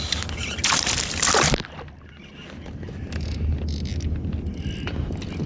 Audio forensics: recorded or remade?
recorded